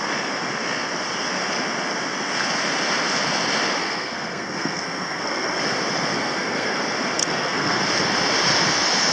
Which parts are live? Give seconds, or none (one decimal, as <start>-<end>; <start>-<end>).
0.0-3.8; 5.6-6.1; 6.8-7.2; 7.8-9.1